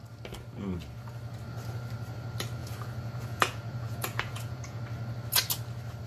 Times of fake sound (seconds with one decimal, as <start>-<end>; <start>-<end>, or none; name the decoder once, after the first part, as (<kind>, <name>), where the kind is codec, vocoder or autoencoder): 2.6-4.8 (vocoder, Vocos)